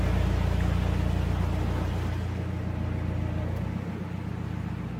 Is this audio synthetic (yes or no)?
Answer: no